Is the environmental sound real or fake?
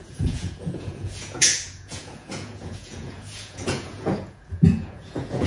fake